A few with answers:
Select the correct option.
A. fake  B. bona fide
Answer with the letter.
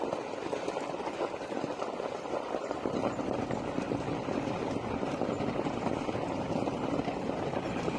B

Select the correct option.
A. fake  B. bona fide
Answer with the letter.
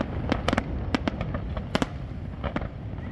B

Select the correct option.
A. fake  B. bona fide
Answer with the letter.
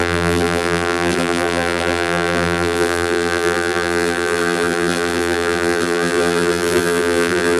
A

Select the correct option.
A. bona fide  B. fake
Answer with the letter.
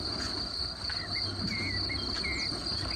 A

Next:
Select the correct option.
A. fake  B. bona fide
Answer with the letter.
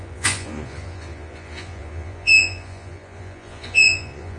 A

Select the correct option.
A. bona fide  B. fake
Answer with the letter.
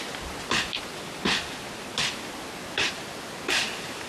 A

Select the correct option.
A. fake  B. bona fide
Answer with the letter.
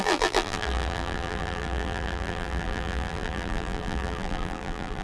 A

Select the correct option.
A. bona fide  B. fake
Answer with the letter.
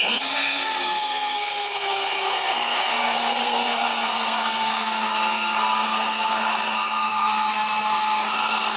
B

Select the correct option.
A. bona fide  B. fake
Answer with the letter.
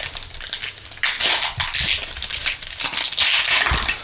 A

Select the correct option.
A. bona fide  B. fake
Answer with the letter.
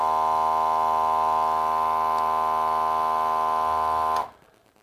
A